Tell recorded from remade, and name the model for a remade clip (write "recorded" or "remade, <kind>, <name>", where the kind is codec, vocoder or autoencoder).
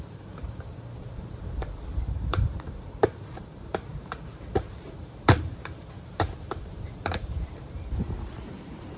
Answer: remade, vocoder, BigVGAN v2